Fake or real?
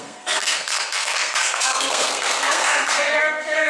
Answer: fake